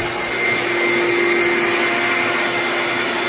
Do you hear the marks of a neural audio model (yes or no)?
no